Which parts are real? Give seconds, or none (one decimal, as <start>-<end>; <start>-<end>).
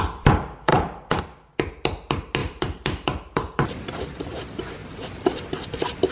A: 0.0-0.7; 1.2-2.4; 3.6-6.1